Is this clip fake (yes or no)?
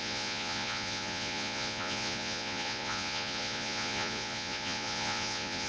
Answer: yes